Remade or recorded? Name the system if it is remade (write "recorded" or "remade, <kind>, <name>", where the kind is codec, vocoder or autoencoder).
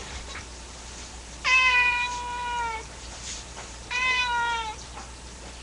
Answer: recorded